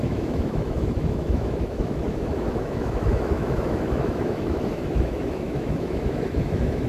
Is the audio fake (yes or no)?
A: yes